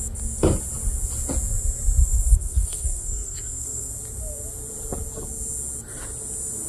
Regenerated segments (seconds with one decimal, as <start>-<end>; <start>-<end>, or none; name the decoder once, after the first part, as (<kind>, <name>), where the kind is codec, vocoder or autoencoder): 2.0-3.9 (codec, SNAC)